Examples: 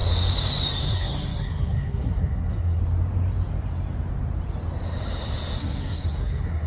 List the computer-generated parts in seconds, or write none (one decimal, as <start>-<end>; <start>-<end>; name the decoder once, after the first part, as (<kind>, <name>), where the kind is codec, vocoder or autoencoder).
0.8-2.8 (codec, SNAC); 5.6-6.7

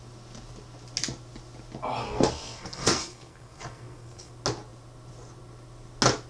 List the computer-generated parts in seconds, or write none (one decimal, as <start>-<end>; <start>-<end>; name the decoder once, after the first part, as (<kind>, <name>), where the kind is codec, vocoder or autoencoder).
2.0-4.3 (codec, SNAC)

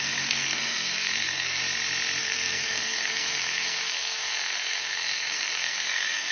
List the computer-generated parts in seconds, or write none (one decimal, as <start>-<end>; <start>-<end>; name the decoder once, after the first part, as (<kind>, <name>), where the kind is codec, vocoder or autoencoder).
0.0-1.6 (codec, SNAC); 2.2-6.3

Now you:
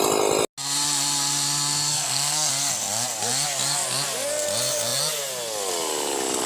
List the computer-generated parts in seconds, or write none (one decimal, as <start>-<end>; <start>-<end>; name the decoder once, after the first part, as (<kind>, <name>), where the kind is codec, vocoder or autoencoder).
1.9-2.5 (codec, SNAC)

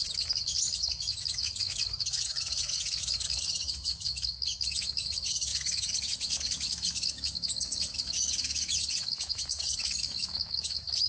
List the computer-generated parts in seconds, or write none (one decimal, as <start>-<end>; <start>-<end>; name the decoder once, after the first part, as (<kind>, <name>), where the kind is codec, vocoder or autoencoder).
0.0-11.1 (autoencoder, DAC-VAE)

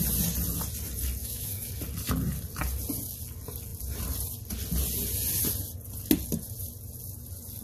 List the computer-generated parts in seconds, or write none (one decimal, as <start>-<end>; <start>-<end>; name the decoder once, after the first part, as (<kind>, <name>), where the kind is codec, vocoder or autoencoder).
1.2-1.7 (autoencoder, DAC-VAE)

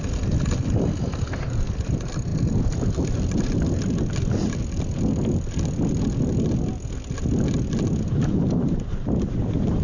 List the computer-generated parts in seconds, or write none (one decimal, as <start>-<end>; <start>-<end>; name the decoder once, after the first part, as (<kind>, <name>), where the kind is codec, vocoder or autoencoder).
none

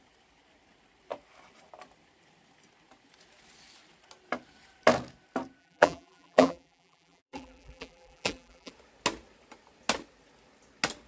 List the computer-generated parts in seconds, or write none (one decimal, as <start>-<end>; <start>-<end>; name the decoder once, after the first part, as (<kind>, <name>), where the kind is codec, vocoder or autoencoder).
5.6-8.7 (vocoder, BigVGAN v2)